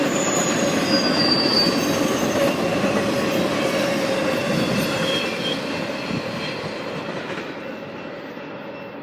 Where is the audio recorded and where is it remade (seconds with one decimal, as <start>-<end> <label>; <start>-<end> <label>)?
0.0-9.0 recorded